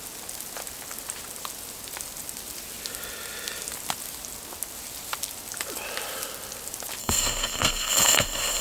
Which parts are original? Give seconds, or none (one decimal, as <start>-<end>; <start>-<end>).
0.0-7.0